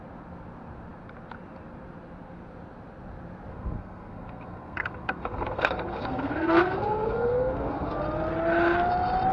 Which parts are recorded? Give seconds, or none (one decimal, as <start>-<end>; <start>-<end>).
0.0-3.5; 8.0-9.3